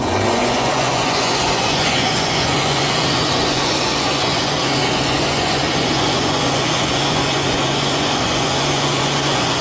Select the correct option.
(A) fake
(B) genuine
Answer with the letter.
A